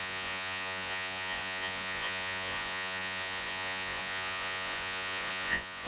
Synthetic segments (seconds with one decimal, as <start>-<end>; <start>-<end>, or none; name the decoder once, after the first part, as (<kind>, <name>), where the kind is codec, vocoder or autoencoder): 0.0-5.9 (vocoder, Vocos)